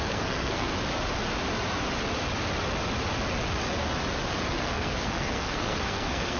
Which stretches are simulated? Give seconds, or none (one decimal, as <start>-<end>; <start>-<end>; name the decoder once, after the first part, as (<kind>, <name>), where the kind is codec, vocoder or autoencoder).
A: 0.0-0.7 (codec, SNAC); 4.5-6.4